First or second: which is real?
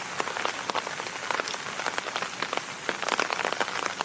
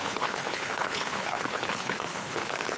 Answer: first